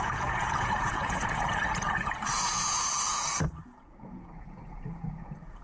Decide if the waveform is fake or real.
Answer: fake